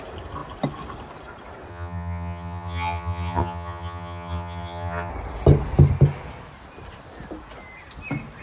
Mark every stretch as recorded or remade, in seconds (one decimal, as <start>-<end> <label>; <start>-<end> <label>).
0.0-1.7 recorded; 1.7-5.1 remade; 5.1-8.4 recorded